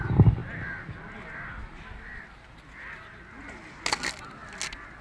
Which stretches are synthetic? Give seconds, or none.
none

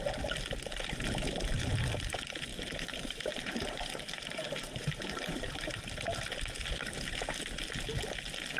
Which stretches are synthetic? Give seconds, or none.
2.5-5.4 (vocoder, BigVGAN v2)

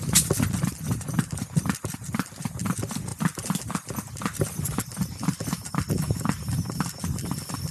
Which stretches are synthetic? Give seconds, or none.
3.1-3.6 (vocoder, BigVGAN v2)

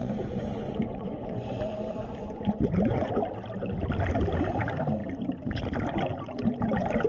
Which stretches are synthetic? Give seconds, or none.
0.0-1.6 (vocoder, Vocos); 2.2-3.1

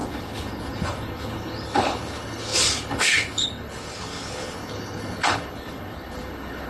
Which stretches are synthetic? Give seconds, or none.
0.0-6.7 (codec, HILCodec)

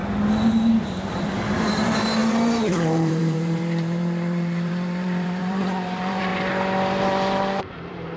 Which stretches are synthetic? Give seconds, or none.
0.8-6.3 (vocoder, BigVGAN v2); 7.6-8.2

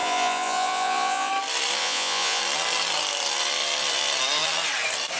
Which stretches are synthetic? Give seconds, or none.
0.0-1.3 (vocoder, Vocos); 1.8-2.4

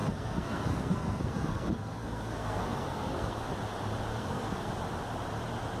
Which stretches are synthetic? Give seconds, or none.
0.0-3.5 (codec, SNAC); 4.1-4.7